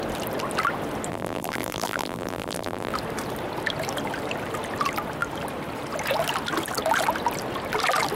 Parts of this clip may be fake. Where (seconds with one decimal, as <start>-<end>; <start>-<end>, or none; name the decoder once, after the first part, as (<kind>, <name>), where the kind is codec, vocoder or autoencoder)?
1.1-2.9 (vocoder, BigVGAN v2)

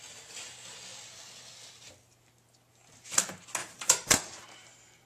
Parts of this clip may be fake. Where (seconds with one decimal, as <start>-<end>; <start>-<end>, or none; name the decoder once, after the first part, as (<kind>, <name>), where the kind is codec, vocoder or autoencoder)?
3.6-5.1 (vocoder, BigVGAN v2)

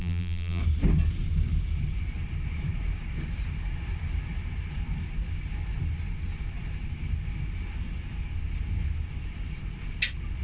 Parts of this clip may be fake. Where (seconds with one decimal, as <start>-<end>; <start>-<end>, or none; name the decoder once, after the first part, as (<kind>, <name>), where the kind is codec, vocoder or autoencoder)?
0.0-0.6 (vocoder, BigVGAN v2)

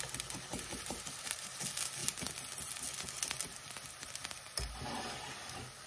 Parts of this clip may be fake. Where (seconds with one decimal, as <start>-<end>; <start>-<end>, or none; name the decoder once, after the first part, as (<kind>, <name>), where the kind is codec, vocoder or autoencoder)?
0.5-1.6 (vocoder, BigVGAN v2)